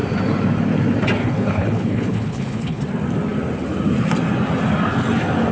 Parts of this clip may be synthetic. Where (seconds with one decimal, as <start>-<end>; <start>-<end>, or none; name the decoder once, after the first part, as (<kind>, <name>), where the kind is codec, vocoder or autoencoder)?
1.2-2.8 (codec, HILCodec)